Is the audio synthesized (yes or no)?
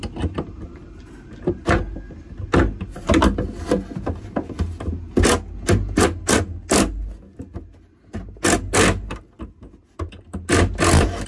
no